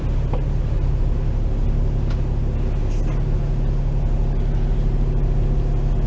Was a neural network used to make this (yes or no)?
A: no